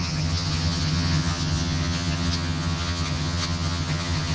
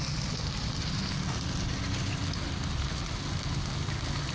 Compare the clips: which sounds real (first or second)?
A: second